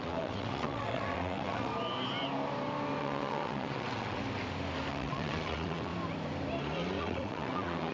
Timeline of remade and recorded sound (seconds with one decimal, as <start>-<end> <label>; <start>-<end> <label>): 0.0-1.7 remade; 1.7-3.0 recorded; 3.0-4.2 remade; 4.2-4.9 recorded; 4.9-5.9 remade; 5.9-7.0 recorded; 7.0-7.9 remade